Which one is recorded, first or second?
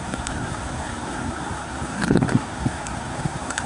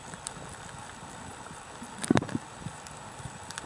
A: second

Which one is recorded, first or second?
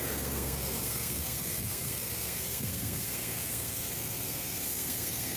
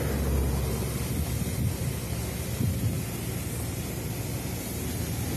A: second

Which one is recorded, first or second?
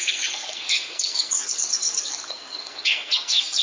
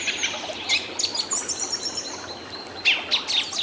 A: second